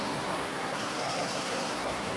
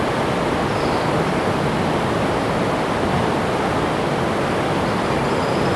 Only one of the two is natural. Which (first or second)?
second